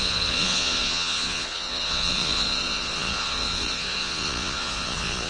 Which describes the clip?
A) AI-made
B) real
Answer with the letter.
A